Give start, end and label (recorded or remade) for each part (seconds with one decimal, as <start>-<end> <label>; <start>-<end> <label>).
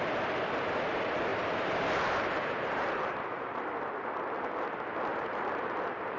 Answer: 0.0-1.3 recorded; 1.3-3.6 remade; 3.6-5.1 recorded; 5.1-6.2 remade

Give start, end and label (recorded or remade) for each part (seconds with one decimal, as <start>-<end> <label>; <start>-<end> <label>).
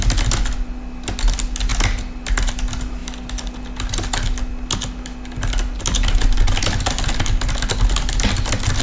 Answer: 0.0-8.8 recorded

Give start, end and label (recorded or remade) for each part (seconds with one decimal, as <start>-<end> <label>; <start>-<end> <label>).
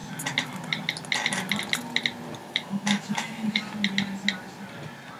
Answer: 0.0-2.4 recorded; 2.4-3.6 remade; 3.6-5.2 recorded